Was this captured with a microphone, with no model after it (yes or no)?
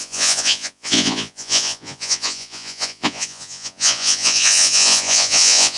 no